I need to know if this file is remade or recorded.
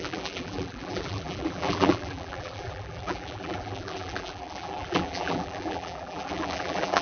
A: remade